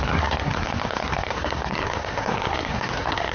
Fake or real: fake